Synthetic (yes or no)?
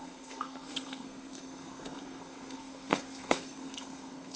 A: yes